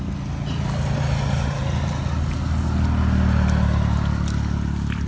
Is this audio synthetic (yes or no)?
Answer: no